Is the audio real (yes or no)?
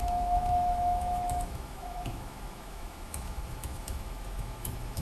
no